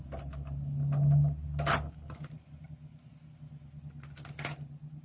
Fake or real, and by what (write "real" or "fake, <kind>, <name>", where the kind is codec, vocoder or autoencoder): real